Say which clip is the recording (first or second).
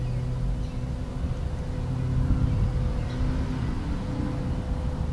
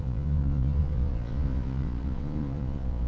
first